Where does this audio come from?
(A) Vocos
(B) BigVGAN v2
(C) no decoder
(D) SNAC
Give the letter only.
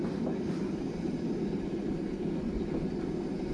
C